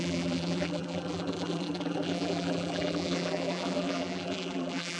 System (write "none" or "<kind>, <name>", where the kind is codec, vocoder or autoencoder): vocoder, BigVGAN v2